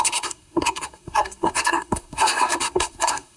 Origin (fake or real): fake